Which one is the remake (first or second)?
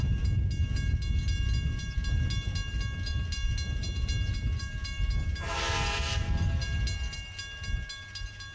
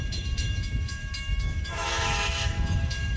second